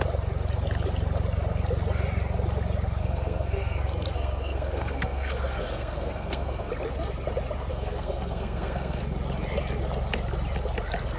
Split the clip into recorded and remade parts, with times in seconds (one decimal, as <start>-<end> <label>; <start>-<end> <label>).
0.0-3.0 recorded; 3.0-6.7 remade; 6.7-7.7 recorded; 7.7-9.0 remade; 9.0-11.2 recorded